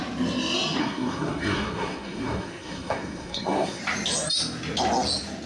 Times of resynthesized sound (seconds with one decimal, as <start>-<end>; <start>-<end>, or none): 0.8-3.8